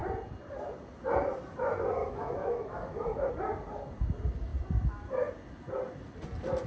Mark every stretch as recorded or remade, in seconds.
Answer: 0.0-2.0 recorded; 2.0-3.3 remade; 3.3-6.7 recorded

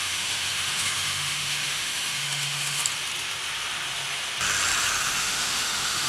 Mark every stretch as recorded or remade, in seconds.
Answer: 0.0-2.8 remade; 2.8-5.2 recorded; 5.2-6.1 remade